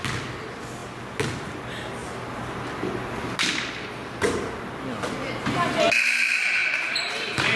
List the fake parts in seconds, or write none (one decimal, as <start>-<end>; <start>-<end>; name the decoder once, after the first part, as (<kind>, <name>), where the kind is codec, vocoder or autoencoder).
6.6-7.6 (vocoder, BigVGAN v2)